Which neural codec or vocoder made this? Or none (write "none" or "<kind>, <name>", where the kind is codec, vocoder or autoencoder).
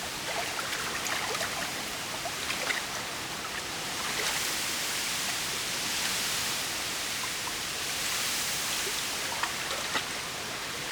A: none